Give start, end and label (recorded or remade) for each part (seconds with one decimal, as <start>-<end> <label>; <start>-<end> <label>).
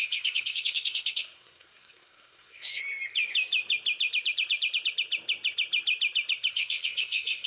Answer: 0.0-2.8 remade; 2.8-6.5 recorded; 6.5-7.5 remade